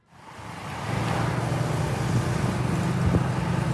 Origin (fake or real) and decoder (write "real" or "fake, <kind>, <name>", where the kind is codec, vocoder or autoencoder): real